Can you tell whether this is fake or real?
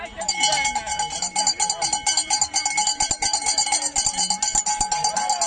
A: real